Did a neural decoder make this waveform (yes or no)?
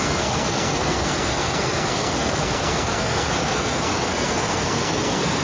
yes